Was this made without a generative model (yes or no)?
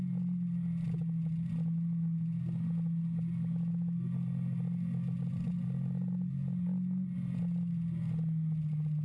yes